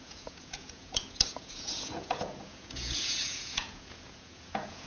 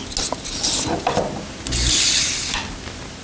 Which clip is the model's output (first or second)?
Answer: first